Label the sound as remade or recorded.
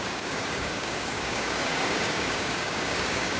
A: remade